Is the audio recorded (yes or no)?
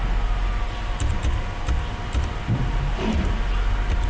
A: yes